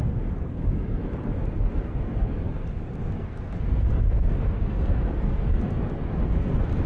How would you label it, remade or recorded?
remade